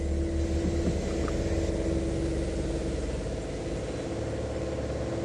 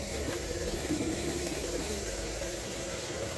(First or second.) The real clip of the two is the first